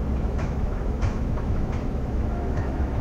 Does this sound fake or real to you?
fake